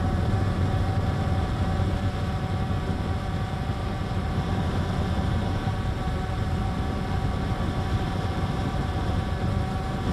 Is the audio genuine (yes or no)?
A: no